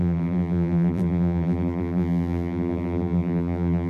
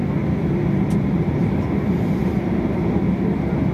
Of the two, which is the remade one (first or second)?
first